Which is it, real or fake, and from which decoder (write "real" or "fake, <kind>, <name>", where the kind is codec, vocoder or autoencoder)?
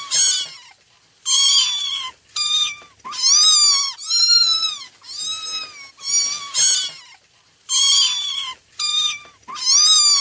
real